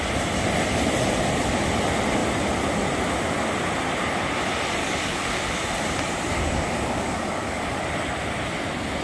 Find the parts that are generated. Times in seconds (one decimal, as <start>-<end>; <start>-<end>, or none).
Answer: 4.8-5.6; 6.3-7.8